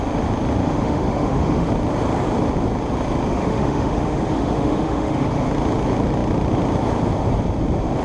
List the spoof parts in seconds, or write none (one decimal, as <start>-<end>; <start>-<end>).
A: 0.6-1.7; 3.3-5.5